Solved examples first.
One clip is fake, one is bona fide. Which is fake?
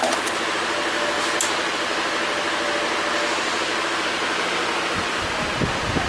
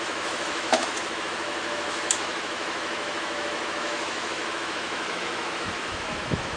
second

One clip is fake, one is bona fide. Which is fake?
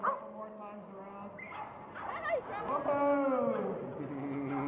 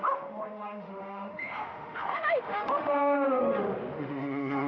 second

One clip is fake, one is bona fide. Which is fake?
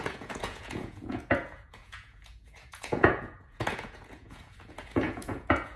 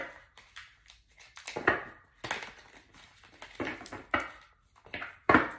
first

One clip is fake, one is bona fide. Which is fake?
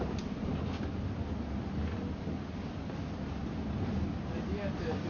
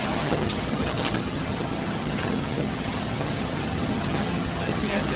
second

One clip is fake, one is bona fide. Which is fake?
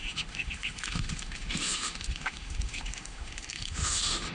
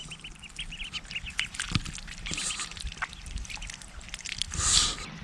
first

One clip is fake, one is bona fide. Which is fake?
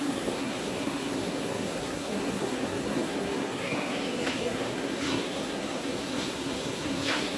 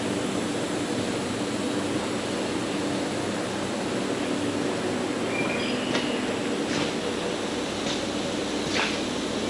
first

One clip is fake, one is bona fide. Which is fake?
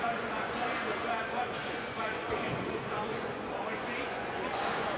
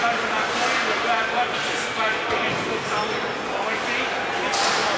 first